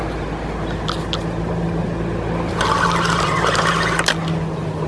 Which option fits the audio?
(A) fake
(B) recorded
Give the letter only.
B